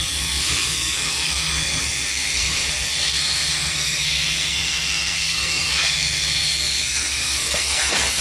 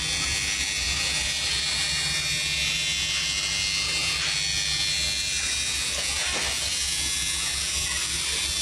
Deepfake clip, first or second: first